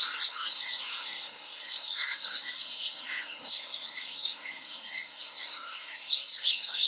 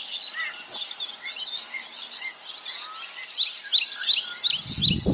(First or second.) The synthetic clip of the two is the first